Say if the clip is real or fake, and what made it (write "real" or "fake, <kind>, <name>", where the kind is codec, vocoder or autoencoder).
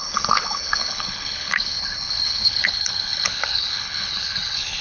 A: fake, codec, HILCodec